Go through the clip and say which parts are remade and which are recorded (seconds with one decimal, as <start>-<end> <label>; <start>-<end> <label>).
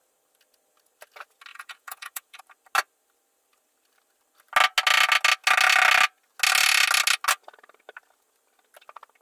0.0-1.5 recorded; 1.5-2.4 remade; 2.4-9.2 recorded